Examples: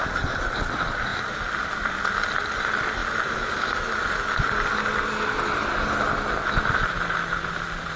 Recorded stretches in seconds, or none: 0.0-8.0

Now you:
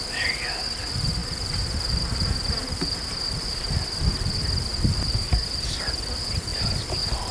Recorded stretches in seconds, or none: 0.0-7.3

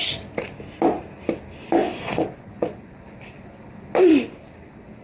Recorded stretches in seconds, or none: 0.0-1.8; 3.0-5.0

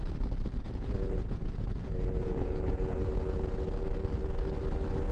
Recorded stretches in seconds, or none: 0.0-0.6; 3.7-5.1

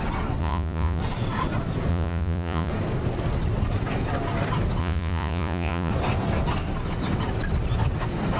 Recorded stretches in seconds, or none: 0.0-0.4; 1.0-1.9; 2.7-4.8; 5.9-8.4

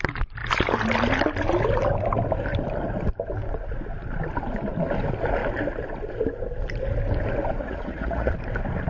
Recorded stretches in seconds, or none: 0.0-7.6; 8.3-8.9

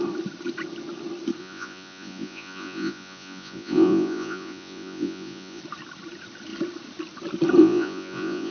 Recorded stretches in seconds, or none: 0.0-1.4; 5.6-7.6